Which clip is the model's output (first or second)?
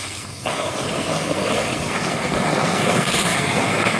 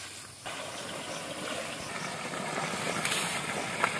first